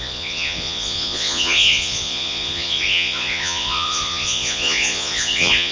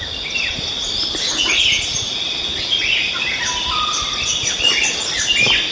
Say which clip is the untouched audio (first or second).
second